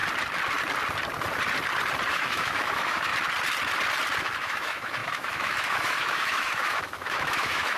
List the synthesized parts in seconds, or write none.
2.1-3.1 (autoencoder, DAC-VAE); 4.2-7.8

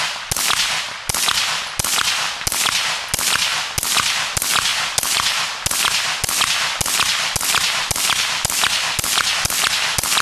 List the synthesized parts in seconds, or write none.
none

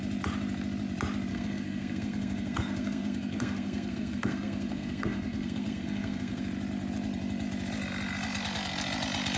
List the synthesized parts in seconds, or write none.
1.3-6.4 (codec, SNAC)

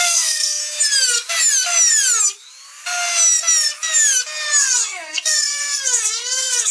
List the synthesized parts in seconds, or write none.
0.0-0.6 (codec, SNAC); 4.6-6.7

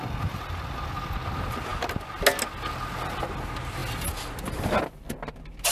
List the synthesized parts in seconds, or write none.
none

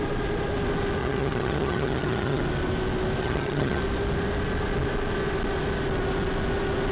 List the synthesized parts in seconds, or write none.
1.0-2.4 (vocoder, HiFi-GAN); 3.2-3.8

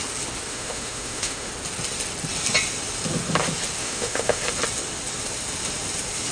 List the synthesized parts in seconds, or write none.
0.5-1.5 (autoencoder, DAC-VAE); 3.8-4.4

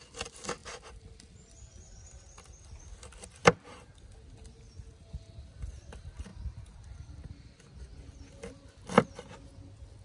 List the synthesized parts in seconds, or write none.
0.6-1.5 (vocoder, BigVGAN v2); 6.3-7.6